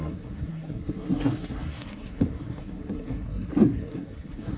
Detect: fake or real fake